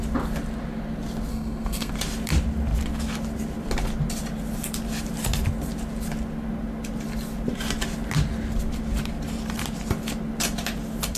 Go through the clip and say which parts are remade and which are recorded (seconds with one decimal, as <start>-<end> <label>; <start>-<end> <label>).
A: 0.0-1.3 recorded; 1.3-1.9 remade; 1.9-11.2 recorded